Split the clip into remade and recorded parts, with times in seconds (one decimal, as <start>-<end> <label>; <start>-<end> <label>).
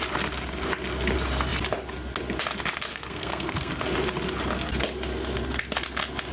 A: 0.0-2.9 recorded; 2.9-3.7 remade; 3.7-6.3 recorded